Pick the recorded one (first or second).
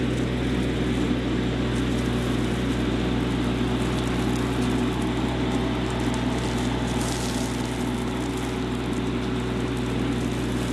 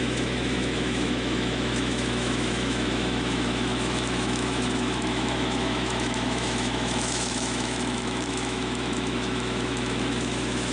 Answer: first